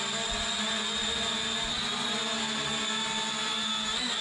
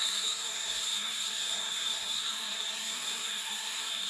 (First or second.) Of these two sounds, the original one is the first